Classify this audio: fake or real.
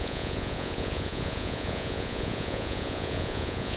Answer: fake